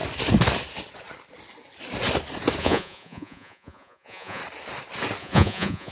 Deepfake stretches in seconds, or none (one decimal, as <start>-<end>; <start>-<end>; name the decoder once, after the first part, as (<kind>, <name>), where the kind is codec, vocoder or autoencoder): 2.6-4.4 (vocoder, Vocos); 5.2-5.9